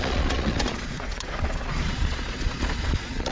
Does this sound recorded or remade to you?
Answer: remade